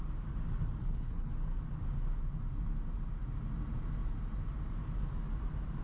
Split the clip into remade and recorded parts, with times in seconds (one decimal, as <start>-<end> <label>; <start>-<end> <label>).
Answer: 0.0-0.8 recorded; 0.8-1.3 remade; 1.3-5.8 recorded